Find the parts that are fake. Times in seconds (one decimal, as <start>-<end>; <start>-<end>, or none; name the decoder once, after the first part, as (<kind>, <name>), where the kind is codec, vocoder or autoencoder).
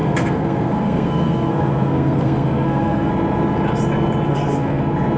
0.0-3.1 (codec, SNAC); 4.3-4.8